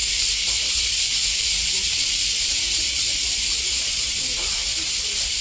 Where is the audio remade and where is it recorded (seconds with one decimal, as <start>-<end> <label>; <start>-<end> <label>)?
0.0-5.4 remade